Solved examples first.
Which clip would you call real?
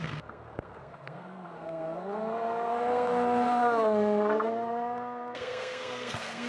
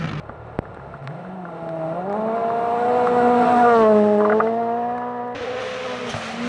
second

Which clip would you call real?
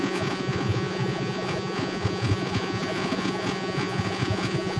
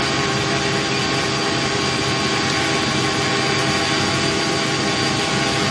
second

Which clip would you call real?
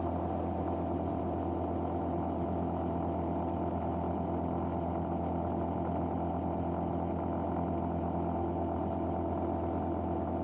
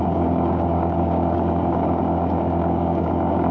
first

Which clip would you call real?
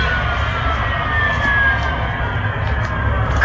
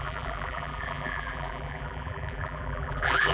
first